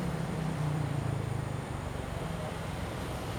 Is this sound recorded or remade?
remade